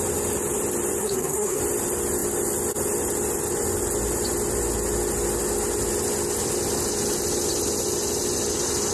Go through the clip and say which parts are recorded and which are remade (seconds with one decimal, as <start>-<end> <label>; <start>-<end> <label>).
0.0-1.0 recorded; 1.0-1.6 remade; 1.6-8.9 recorded